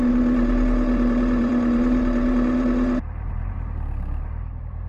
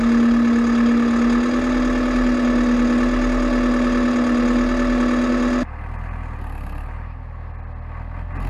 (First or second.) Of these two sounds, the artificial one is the first